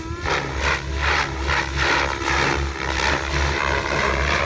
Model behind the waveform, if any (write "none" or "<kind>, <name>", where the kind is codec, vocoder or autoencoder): none